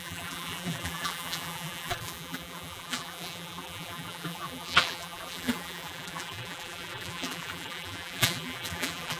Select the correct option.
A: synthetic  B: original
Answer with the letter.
A